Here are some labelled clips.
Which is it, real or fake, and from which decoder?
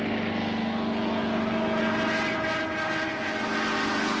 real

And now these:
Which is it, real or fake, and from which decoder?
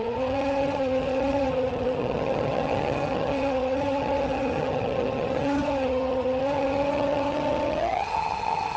fake, vocoder, HiFi-GAN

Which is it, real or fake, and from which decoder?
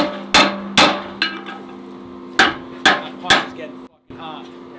real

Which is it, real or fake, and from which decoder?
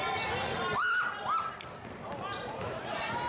real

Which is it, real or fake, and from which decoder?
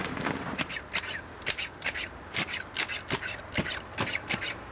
real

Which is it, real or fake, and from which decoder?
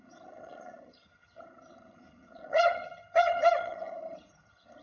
fake, vocoder, HiFi-GAN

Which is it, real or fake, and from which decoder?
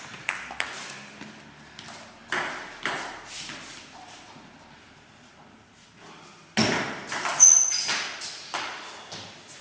real